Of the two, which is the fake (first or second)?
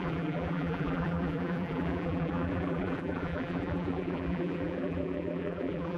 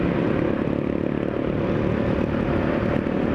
first